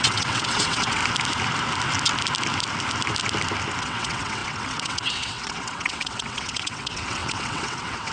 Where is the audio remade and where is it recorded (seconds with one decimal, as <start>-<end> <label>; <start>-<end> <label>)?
0.0-1.0 remade; 1.0-3.8 recorded; 3.8-8.1 remade